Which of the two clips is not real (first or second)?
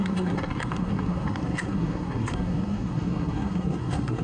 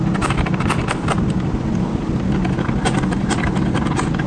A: first